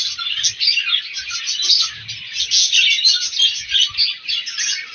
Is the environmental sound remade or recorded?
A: recorded